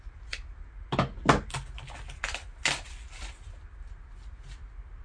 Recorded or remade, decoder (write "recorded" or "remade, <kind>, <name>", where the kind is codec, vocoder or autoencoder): recorded